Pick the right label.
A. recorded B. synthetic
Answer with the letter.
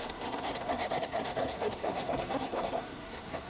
B